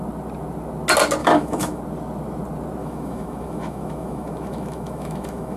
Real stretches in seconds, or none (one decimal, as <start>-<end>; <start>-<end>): 0.0-1.2; 1.8-2.8